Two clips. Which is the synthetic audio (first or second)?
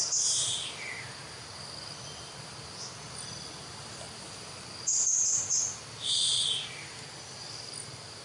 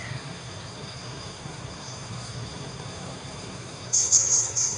second